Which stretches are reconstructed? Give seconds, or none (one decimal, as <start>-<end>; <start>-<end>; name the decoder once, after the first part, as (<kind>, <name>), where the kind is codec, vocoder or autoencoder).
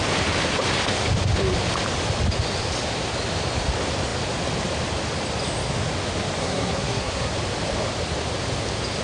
6.4-7.3 (codec, SNAC)